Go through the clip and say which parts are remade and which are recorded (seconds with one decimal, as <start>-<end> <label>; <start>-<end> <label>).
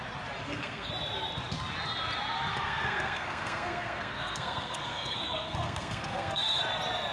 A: 0.0-0.4 recorded; 0.4-0.9 remade; 0.9-2.5 recorded; 2.5-6.6 remade; 6.6-7.1 recorded